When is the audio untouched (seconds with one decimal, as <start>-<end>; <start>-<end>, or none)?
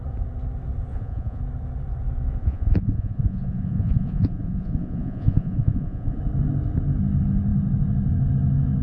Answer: 0.0-0.9; 1.4-2.4; 6.2-8.8